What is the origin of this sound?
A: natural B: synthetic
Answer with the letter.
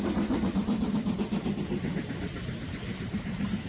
A